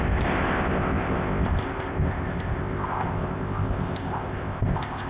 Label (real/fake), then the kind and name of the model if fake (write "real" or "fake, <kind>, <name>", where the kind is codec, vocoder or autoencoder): fake, codec, ZipCodec